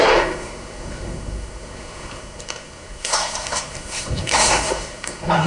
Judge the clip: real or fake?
fake